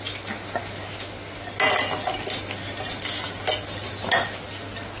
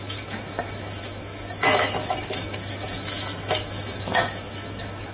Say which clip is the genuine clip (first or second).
first